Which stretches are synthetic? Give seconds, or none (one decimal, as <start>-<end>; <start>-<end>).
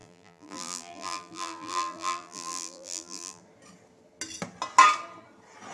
0.0-3.4